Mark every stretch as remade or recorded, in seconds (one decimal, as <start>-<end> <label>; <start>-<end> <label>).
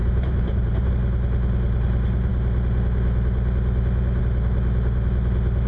0.0-0.9 remade; 0.9-5.7 recorded